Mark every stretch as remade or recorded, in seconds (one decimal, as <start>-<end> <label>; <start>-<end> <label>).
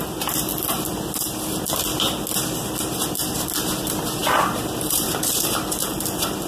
0.0-4.2 recorded; 4.2-6.0 remade; 6.0-6.5 recorded